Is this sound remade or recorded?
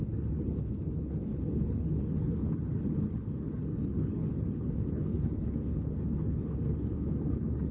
remade